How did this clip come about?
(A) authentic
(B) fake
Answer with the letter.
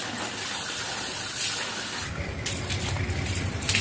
A